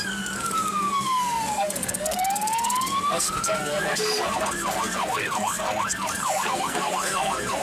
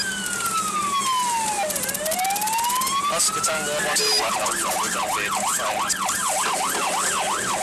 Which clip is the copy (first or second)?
first